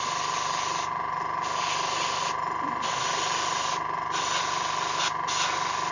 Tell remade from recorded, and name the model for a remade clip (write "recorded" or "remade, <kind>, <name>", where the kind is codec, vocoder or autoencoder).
recorded